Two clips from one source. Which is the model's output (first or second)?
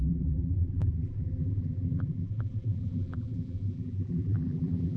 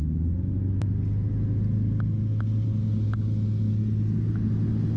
first